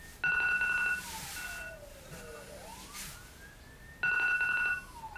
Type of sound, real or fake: real